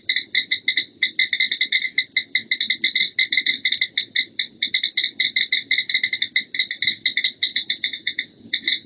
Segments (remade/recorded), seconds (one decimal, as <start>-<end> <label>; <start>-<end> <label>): 0.0-7.5 recorded; 7.5-8.9 remade

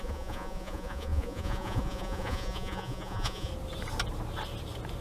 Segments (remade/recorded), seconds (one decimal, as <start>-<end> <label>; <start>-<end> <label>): 0.0-3.5 remade; 3.5-5.0 recorded

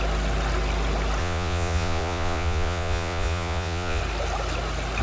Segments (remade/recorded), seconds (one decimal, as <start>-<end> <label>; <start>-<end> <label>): 0.0-1.2 recorded; 1.2-4.0 remade; 4.0-5.0 recorded

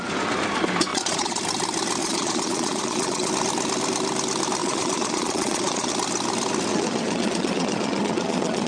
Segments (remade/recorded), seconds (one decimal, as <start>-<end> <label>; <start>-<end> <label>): 0.0-0.9 recorded; 0.9-1.4 remade; 1.4-2.0 recorded; 2.0-3.3 remade; 3.3-4.6 recorded; 4.6-5.9 remade; 5.9-6.7 recorded; 6.7-8.7 remade

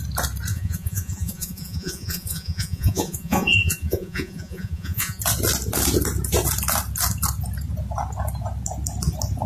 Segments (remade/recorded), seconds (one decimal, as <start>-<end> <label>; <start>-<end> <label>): 0.0-0.5 recorded; 0.5-5.2 remade; 5.2-9.5 recorded

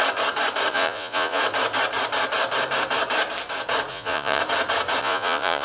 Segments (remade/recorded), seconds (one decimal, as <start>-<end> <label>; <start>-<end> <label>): 0.0-0.7 recorded; 0.7-1.4 remade; 1.4-3.9 recorded; 3.9-4.4 remade; 4.4-5.0 recorded; 5.0-5.6 remade

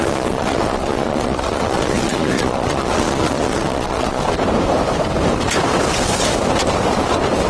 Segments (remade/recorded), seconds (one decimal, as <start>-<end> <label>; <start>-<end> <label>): 0.0-4.2 remade; 4.2-7.5 recorded